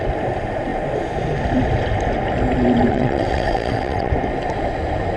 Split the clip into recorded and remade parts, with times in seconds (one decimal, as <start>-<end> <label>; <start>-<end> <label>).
0.0-2.9 recorded; 2.9-4.1 remade; 4.1-5.2 recorded